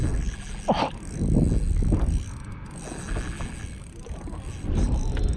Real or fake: real